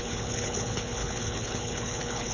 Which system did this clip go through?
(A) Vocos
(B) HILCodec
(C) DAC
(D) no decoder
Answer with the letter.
B